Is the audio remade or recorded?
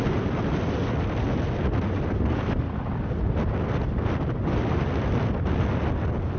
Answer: recorded